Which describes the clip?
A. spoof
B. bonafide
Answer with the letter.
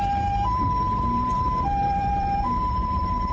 A